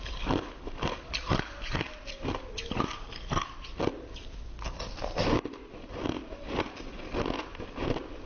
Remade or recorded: recorded